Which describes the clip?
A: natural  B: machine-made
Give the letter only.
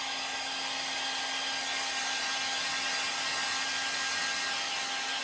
A